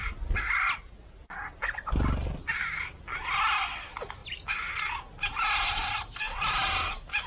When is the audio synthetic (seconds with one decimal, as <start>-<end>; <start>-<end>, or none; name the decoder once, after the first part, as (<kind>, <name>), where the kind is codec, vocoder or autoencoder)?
3.2-4.2 (vocoder, BigVGAN v2); 5.6-7.3